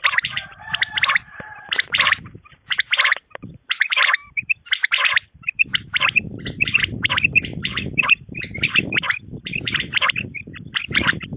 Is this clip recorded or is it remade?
remade